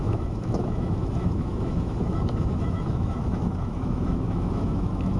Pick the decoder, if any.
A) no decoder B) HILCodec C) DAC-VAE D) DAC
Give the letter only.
C